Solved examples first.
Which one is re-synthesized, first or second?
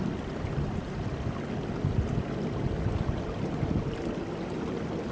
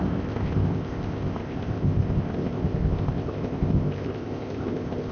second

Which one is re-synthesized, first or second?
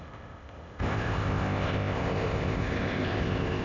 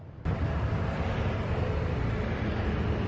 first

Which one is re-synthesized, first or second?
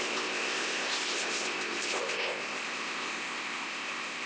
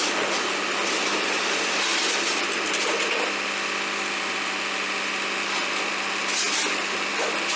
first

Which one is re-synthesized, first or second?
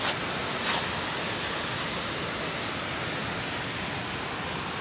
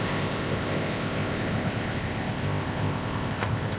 second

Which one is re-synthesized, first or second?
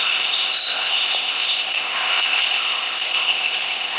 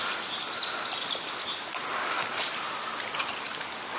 first